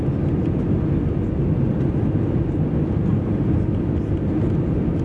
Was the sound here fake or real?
real